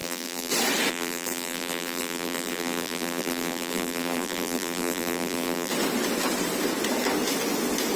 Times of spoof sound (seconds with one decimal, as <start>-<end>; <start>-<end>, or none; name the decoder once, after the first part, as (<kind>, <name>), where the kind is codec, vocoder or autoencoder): 0.0-0.5 (vocoder, BigVGAN v2); 0.9-5.7